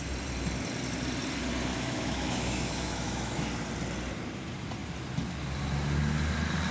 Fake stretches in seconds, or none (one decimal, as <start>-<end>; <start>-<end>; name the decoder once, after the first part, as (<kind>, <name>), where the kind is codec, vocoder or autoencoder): 1.7-3.5 (autoencoder, DAC-VAE)